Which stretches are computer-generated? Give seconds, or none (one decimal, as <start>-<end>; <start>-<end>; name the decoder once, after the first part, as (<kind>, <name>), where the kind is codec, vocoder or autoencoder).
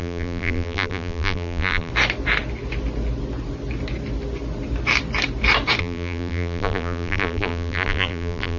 0.0-1.9 (vocoder, BigVGAN v2); 5.8-8.6